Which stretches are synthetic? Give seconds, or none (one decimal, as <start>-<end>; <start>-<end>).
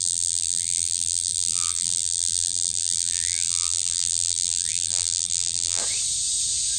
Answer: 0.0-5.8